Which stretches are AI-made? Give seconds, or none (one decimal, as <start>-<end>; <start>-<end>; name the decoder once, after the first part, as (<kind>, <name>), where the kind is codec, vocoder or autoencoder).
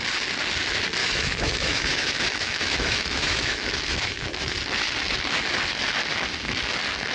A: 1.0-4.5 (autoencoder, DAC-VAE)